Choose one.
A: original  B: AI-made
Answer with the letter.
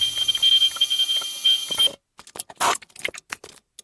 A